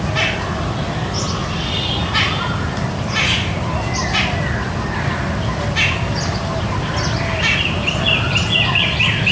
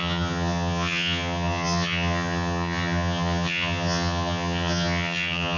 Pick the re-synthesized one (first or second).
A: second